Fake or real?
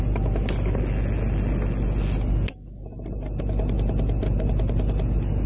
real